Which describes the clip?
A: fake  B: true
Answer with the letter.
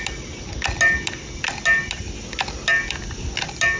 B